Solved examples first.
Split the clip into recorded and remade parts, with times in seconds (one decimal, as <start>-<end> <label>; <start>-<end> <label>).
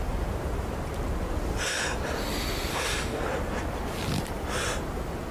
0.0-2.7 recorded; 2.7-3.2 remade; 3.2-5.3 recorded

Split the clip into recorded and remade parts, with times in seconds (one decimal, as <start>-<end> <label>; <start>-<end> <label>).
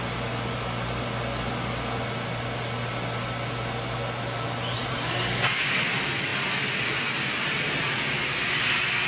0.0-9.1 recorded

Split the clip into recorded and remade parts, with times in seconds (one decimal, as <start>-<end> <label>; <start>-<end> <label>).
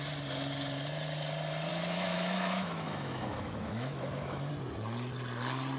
0.0-1.7 recorded; 1.7-4.5 remade; 4.5-5.8 recorded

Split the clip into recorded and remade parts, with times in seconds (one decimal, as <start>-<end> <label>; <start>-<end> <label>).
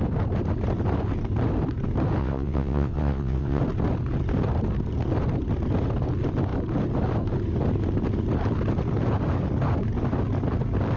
0.0-2.2 recorded; 2.2-3.6 remade; 3.6-11.0 recorded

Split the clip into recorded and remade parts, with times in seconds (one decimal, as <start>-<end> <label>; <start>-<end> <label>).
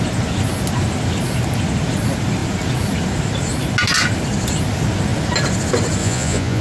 0.0-6.0 recorded; 6.0-6.6 remade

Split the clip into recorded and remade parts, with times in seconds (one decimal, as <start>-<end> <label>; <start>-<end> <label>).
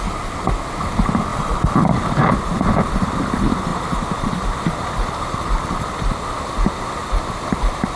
0.0-8.0 recorded